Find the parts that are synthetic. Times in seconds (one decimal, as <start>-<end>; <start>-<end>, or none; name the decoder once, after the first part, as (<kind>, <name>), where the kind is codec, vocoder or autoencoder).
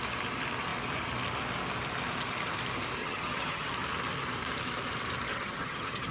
3.0-3.7 (vocoder, HiFi-GAN); 5.3-6.1